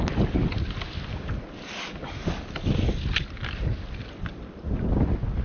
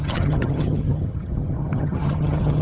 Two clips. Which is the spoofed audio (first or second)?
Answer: second